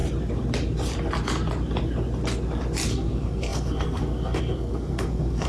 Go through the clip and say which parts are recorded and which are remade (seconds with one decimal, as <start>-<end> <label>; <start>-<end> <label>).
0.0-2.9 recorded; 2.9-5.5 remade